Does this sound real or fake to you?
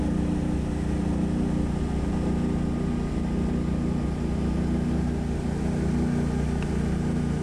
real